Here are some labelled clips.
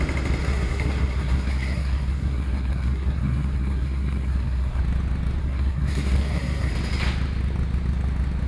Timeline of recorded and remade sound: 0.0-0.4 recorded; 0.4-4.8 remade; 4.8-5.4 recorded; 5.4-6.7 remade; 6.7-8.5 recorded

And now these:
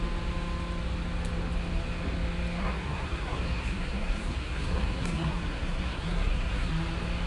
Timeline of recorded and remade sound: 0.0-2.6 recorded; 2.6-6.7 remade; 6.7-7.3 recorded